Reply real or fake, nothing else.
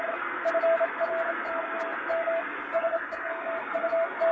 real